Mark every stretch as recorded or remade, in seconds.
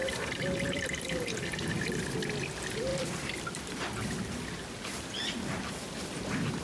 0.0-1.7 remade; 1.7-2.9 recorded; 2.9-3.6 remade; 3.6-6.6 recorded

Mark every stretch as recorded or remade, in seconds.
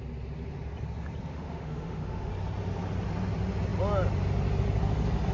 0.0-1.3 recorded; 1.3-2.3 remade; 2.3-5.3 recorded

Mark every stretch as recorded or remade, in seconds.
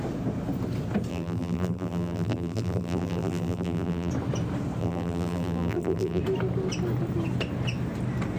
0.0-1.1 recorded; 1.1-4.1 remade; 4.1-4.8 recorded; 4.8-6.2 remade; 6.2-8.4 recorded